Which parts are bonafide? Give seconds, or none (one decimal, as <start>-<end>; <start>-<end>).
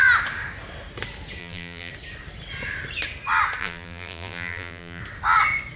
0.0-1.4; 1.9-3.6; 5.0-5.8